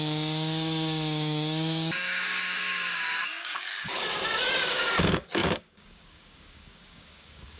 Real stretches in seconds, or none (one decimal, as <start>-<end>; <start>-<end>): none